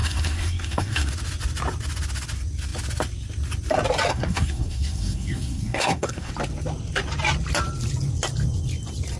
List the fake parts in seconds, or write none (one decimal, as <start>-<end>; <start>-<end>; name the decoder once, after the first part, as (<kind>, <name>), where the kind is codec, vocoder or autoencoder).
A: 0.0-1.1 (codec, SNAC); 4.1-6.3